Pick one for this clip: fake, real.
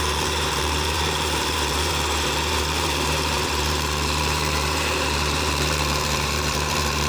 fake